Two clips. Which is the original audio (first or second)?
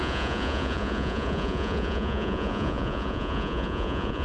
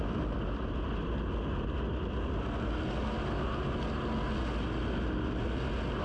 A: second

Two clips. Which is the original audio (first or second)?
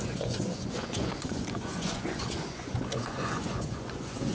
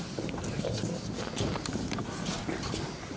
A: second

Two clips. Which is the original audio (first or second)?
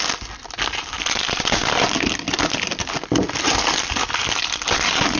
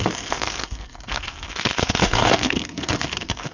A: first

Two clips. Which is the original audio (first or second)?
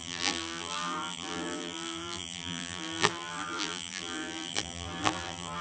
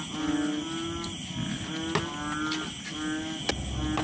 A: second